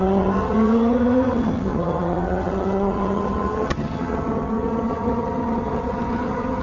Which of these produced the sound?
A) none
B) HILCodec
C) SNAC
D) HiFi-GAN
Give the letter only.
D